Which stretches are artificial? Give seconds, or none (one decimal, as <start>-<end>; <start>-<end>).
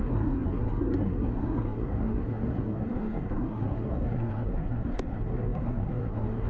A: 0.0-6.5